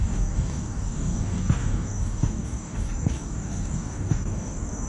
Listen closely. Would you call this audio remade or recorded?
remade